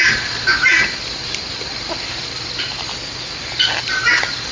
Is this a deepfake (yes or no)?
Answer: no